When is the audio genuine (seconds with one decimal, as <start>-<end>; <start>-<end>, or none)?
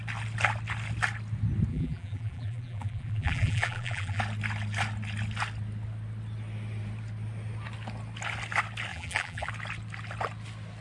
0.0-1.7; 4.2-8.9; 9.5-10.8